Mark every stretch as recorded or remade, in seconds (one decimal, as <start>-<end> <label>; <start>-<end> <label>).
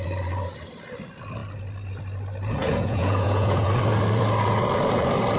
0.0-2.6 recorded; 2.6-3.7 remade; 3.7-5.4 recorded